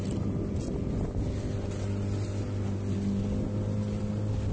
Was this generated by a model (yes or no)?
no